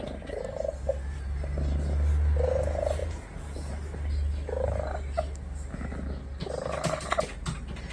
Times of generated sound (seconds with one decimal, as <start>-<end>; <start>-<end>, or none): 3.0-3.7